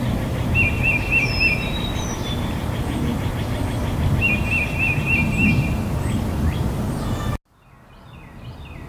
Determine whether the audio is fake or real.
real